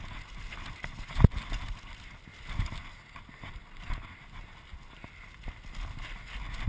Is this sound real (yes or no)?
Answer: yes